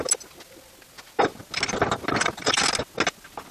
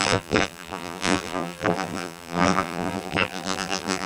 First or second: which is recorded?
first